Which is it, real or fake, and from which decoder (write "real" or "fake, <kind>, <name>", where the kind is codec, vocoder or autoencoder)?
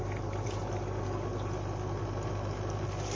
real